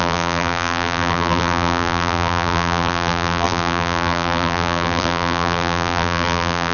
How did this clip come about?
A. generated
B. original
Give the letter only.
A